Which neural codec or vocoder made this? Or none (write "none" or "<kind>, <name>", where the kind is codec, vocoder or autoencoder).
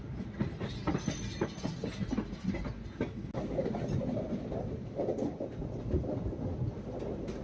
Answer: none